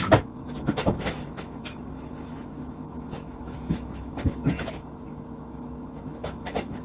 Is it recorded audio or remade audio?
remade